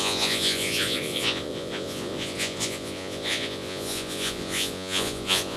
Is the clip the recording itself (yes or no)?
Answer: no